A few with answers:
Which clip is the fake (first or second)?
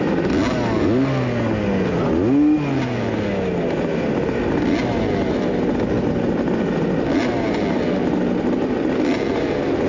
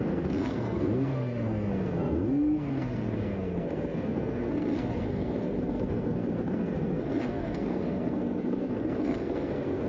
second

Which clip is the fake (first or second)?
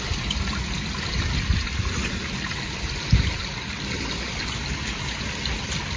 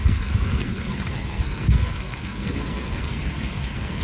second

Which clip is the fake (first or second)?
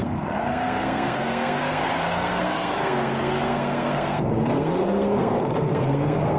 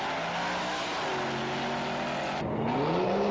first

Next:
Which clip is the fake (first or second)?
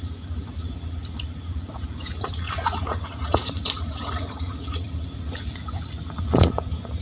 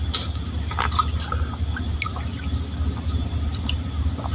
first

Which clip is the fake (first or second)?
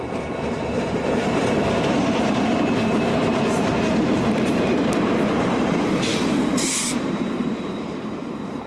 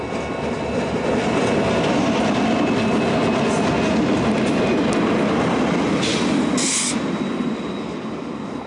first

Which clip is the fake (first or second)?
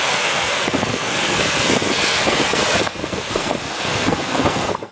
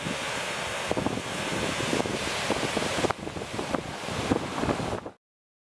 first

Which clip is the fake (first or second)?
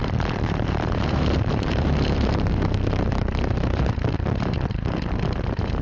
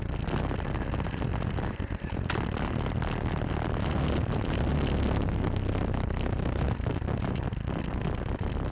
first